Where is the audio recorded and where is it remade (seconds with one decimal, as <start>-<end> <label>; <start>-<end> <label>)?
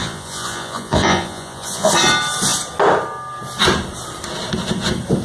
0.0-1.9 remade; 1.9-5.2 recorded